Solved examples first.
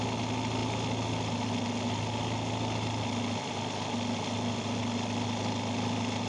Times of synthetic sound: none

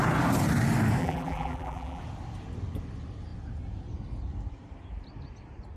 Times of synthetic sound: 1.0-2.0 (vocoder, BigVGAN v2)

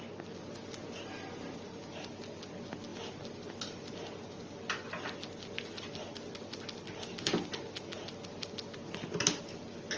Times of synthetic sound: none

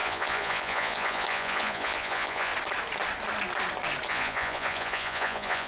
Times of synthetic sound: 0.0-2.5 (vocoder, Vocos); 4.1-5.7

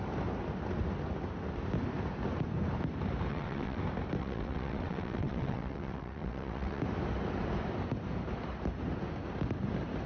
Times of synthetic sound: 3.3-3.8 (vocoder, WaveNeXt); 4.2-6.8

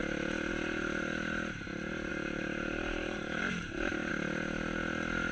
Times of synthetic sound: 2.1-4.1 (vocoder, BigVGAN v2)

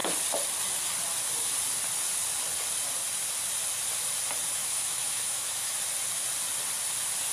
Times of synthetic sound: 4.6-5.8 (autoencoder, DAC-VAE)